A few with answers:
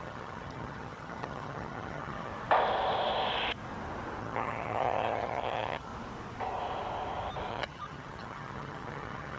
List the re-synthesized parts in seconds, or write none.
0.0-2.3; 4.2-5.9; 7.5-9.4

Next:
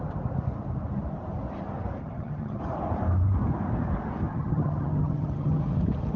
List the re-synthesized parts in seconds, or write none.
2.0-2.6; 4.3-5.6

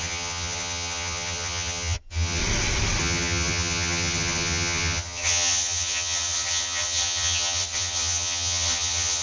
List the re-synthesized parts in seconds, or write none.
0.0-2.4; 3.0-9.2